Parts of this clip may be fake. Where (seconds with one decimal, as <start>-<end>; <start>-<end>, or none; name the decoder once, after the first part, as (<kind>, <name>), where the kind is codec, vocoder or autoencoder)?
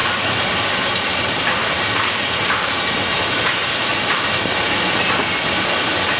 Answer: 0.0-2.1 (vocoder, BigVGAN v2)